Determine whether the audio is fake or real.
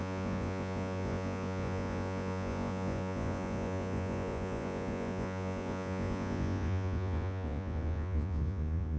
fake